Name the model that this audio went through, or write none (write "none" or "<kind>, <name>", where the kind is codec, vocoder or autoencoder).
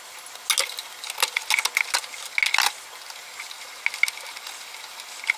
none